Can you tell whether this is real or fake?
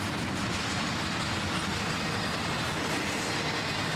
real